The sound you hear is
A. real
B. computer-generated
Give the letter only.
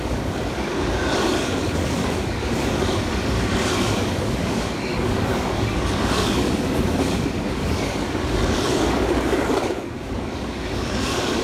B